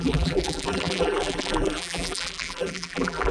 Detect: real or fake fake